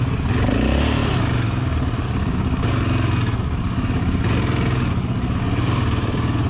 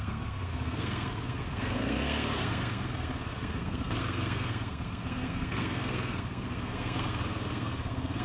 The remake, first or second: second